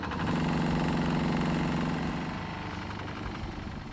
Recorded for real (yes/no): yes